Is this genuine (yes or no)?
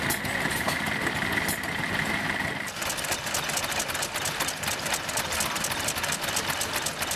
yes